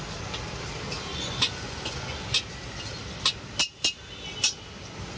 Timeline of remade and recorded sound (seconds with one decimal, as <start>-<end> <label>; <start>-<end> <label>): 0.0-1.1 recorded; 1.1-2.2 remade; 2.2-5.2 recorded

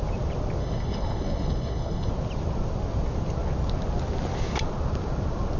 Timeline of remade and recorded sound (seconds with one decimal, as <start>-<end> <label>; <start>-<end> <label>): 0.0-0.6 recorded; 0.6-2.1 remade; 2.1-5.6 recorded

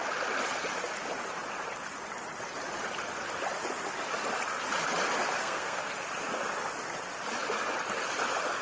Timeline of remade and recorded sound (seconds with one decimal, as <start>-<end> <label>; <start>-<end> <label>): 0.0-5.4 recorded; 5.4-5.9 remade; 5.9-8.6 recorded

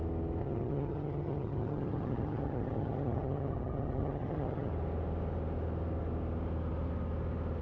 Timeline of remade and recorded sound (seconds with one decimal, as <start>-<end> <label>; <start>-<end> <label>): 0.0-0.4 recorded; 0.4-4.7 remade; 4.7-7.6 recorded

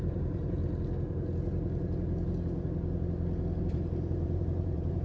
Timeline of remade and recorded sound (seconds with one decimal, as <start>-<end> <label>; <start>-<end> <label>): 0.0-0.6 remade; 0.6-3.6 recorded; 3.6-5.0 remade

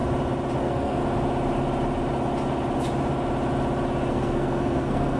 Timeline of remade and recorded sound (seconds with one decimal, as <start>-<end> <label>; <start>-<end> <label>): 0.0-0.6 recorded; 0.6-1.0 remade; 1.0-4.1 recorded; 4.1-5.2 remade

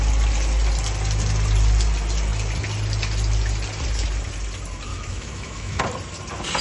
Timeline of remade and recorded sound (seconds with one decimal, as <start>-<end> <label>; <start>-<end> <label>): 0.0-4.9 recorded; 4.9-5.8 remade; 5.8-6.6 recorded